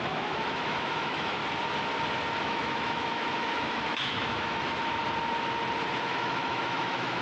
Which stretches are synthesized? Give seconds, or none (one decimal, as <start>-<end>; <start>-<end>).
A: 0.0-1.4; 2.4-5.0; 6.0-7.2